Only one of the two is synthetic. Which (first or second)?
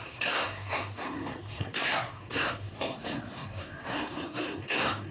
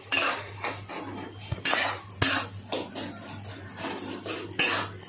first